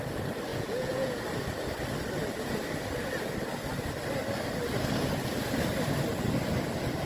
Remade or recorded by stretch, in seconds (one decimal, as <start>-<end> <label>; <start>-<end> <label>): 0.0-0.5 recorded; 0.5-1.2 remade; 1.2-7.1 recorded